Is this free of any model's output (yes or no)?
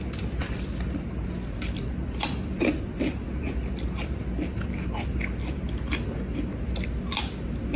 yes